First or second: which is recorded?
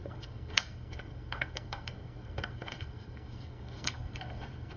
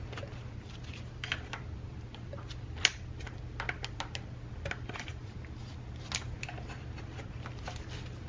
second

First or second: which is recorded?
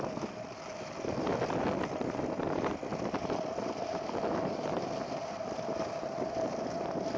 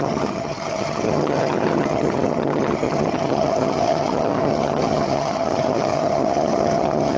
first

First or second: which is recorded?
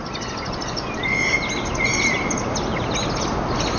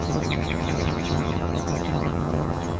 first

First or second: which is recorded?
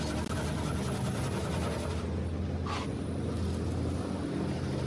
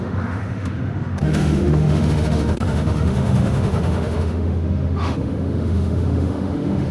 first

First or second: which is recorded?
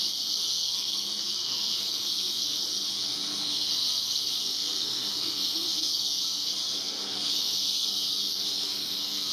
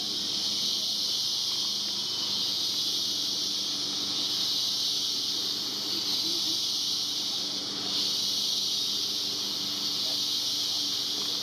second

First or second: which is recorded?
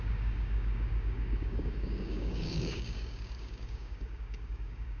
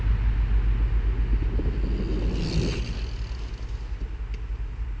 second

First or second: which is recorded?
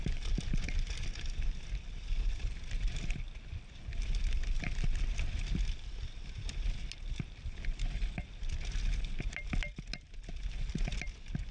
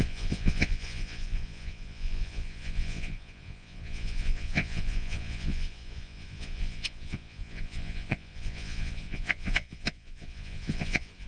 first